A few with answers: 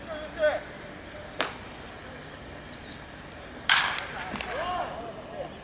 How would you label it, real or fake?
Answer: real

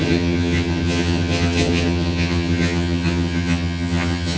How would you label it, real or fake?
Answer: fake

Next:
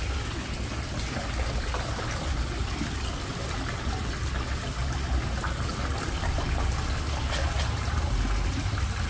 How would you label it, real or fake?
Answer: real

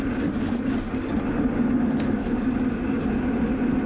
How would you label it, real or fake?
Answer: real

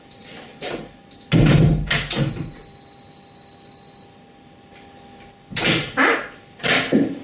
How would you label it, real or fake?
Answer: real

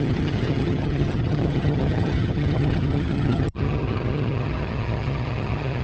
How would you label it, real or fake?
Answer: fake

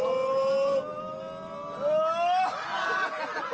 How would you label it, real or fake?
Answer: real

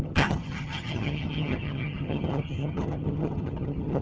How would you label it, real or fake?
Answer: fake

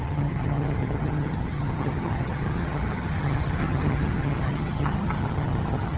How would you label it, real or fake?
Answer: fake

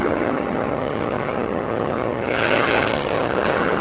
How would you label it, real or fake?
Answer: fake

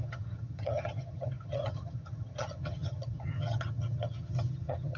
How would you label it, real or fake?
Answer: fake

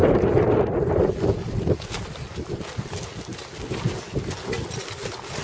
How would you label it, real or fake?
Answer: real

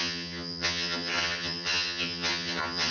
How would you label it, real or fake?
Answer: fake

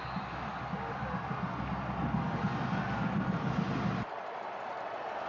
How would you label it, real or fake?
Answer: real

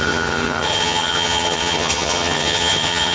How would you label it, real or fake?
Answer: fake